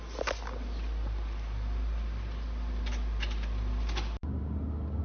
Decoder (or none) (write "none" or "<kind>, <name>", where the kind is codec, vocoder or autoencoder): none